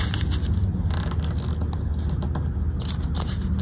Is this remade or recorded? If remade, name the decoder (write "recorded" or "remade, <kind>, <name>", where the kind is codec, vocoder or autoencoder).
recorded